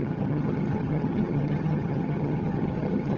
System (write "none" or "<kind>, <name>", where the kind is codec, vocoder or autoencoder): vocoder, HiFi-GAN